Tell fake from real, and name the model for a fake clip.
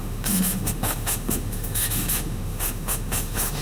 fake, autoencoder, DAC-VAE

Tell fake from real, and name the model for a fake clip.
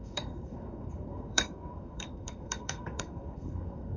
fake, codec, SNAC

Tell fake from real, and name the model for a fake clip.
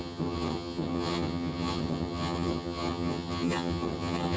fake, vocoder, HiFi-GAN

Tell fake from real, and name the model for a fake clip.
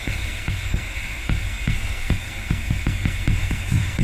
fake, codec, SNAC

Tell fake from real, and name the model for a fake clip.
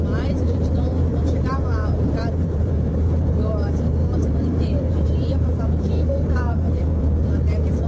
fake, vocoder, BigVGAN v2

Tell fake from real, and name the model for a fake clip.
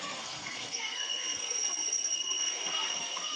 fake, codec, SNAC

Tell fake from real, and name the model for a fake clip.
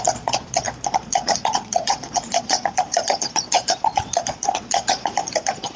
fake, vocoder, Vocos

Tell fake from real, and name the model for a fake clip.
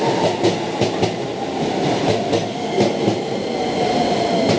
real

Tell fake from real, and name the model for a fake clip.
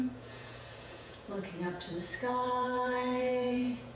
fake, vocoder, Vocos